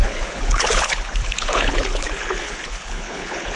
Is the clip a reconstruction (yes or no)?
yes